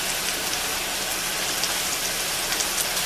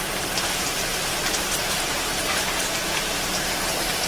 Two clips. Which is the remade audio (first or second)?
second